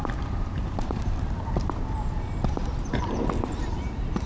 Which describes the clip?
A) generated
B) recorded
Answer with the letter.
A